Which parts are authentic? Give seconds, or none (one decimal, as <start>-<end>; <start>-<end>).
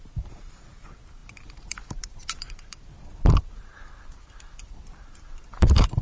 none